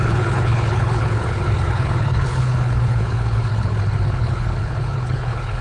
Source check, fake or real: fake